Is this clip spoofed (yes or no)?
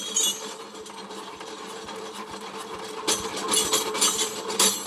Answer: no